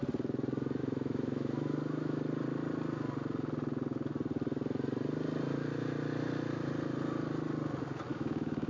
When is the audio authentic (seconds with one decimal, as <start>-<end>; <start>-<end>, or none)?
0.0-0.8; 2.2-8.1